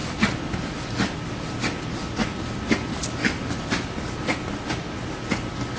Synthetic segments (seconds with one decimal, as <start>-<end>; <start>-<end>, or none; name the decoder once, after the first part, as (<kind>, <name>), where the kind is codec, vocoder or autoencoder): none